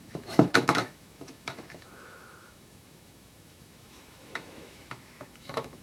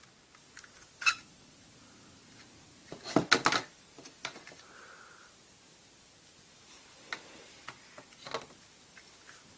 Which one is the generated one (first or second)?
first